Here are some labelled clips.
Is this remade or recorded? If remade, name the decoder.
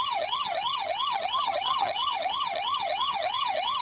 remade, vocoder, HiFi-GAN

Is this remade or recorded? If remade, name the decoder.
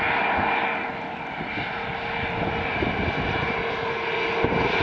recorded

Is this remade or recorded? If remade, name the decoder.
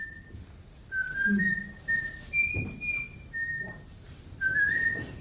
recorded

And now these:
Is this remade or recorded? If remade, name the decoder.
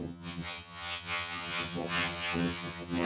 remade, vocoder, HiFi-GAN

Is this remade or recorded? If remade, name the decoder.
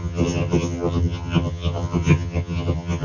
remade, vocoder, HiFi-GAN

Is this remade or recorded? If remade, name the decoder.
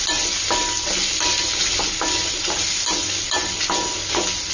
recorded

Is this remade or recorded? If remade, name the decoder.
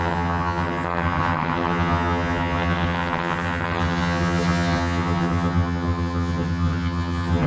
remade, vocoder, HiFi-GAN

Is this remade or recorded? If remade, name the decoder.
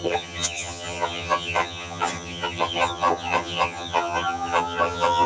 remade, vocoder, HiFi-GAN